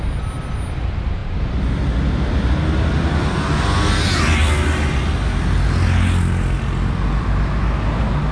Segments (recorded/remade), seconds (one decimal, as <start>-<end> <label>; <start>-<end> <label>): 0.0-8.3 recorded